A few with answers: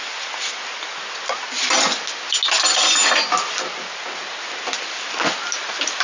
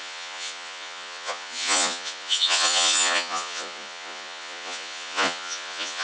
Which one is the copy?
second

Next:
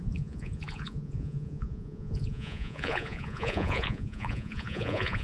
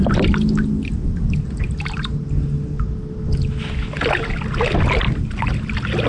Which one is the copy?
first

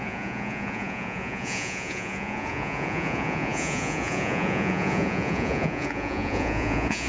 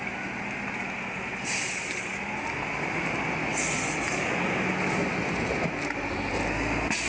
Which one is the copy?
first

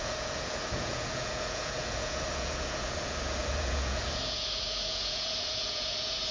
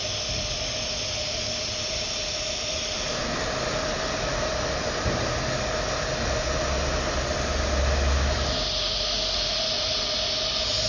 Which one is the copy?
first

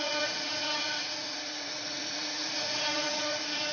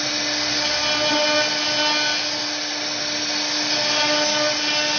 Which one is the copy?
first